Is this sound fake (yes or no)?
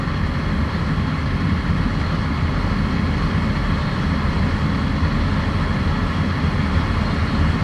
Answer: no